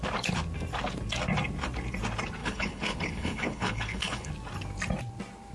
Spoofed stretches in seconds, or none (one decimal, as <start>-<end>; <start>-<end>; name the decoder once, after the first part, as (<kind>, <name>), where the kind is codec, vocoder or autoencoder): 2.4-4.3 (codec, HILCodec)